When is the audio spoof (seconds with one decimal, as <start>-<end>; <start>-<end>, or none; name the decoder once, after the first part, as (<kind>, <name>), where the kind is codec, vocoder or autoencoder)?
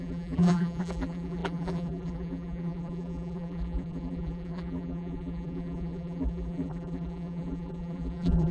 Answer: 0.0-8.5 (vocoder, BigVGAN v2)